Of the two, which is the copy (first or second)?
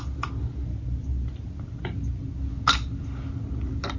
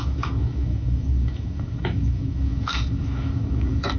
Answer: second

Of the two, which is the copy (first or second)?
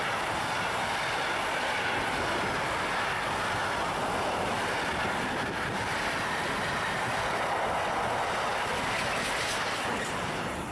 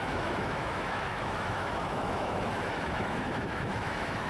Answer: second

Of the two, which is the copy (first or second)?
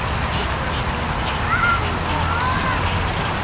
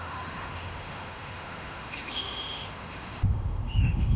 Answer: second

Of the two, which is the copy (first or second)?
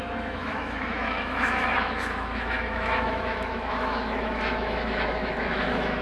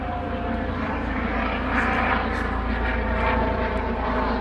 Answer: first